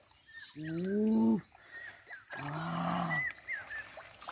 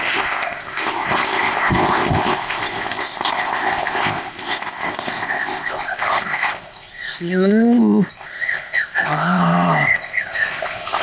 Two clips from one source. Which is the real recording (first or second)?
first